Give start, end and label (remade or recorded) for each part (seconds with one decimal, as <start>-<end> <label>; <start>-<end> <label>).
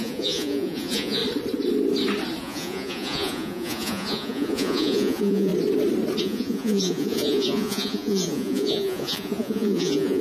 0.0-1.2 remade; 1.2-2.4 recorded; 2.4-5.5 remade; 5.5-6.2 recorded; 6.2-10.2 remade